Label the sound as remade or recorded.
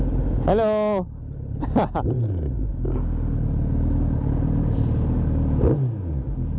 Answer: recorded